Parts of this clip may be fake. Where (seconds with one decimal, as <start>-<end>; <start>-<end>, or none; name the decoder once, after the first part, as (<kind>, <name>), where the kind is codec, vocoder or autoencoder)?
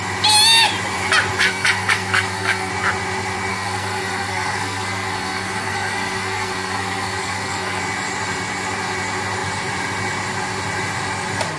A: 1.4-2.7 (codec, SNAC); 3.5-7.8